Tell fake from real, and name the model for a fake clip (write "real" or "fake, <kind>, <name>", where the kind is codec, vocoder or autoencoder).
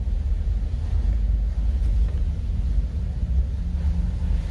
real